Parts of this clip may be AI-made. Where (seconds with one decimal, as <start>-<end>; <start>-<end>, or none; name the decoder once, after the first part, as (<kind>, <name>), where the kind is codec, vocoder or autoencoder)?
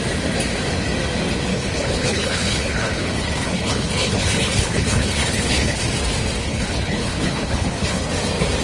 1.5-5.8 (codec, HILCodec); 6.4-8.1